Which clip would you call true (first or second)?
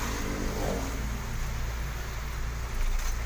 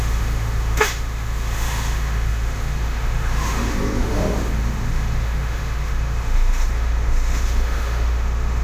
first